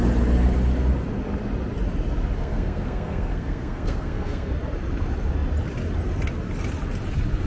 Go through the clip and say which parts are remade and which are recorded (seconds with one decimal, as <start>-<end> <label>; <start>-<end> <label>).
0.0-2.4 recorded; 2.4-4.5 remade; 4.5-7.5 recorded